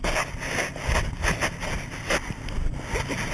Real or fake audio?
real